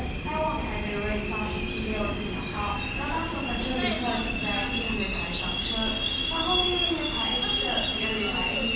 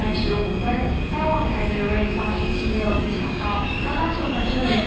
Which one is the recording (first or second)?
first